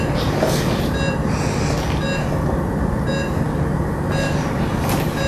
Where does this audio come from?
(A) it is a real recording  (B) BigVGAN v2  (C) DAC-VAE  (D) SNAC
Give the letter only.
A